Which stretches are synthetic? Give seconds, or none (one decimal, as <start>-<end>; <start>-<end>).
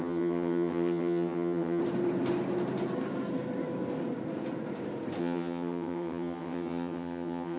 0.0-1.8; 5.2-7.6